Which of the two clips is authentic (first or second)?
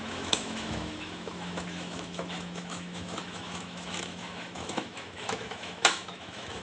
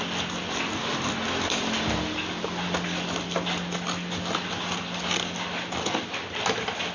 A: second